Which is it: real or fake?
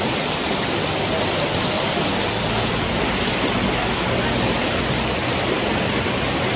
real